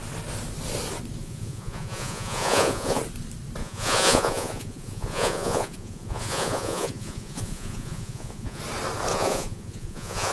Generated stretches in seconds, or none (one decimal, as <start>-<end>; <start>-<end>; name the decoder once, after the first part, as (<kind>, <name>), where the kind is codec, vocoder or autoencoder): 1.2-3.0 (vocoder, Vocos); 3.6-8.6; 9.1-10.3